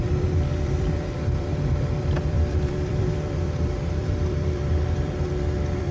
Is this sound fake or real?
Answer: fake